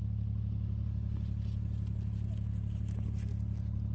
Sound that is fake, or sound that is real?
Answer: real